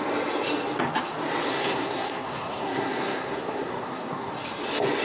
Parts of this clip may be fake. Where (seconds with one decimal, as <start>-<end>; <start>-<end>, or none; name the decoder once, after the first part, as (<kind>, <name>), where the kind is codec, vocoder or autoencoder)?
1.5-4.3 (codec, SNAC)